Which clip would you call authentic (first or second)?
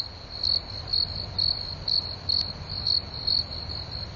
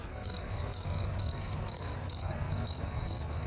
first